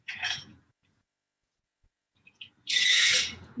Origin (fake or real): fake